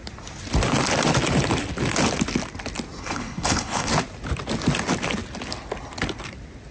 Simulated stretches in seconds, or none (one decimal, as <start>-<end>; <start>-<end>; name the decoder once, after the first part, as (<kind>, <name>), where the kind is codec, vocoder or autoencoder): 3.0-3.9 (codec, HILCodec)